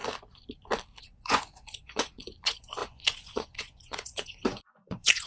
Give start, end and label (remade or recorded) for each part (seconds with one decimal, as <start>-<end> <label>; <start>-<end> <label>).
0.0-1.0 recorded; 1.0-5.3 remade